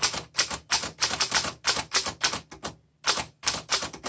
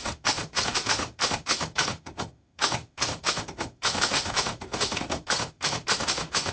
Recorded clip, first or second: first